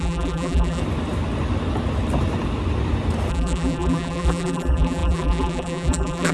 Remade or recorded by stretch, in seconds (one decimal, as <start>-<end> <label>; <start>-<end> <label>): 0.0-0.8 remade; 0.8-3.3 recorded; 3.3-6.3 remade